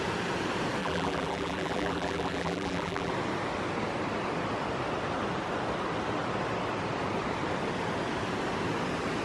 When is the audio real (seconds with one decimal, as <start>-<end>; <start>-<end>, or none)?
0.0-0.8; 3.1-9.2